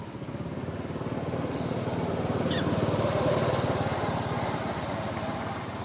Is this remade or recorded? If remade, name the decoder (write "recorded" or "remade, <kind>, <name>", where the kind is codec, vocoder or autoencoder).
recorded